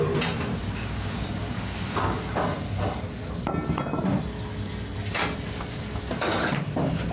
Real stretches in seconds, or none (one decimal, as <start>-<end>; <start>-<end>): 0.0-0.6; 2.2-7.1